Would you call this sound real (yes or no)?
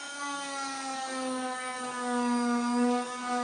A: no